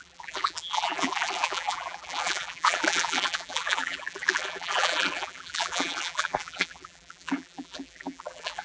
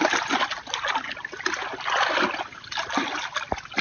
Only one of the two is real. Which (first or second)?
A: second